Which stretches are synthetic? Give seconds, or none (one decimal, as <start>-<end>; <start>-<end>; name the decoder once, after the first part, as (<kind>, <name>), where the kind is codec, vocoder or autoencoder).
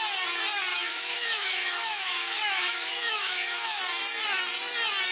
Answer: 0.7-3.8 (autoencoder, DAC-VAE)